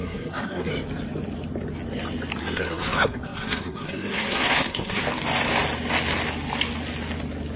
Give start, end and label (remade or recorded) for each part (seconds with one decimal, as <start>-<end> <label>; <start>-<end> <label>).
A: 0.0-0.7 remade; 0.7-2.4 recorded; 2.4-5.0 remade; 5.0-7.6 recorded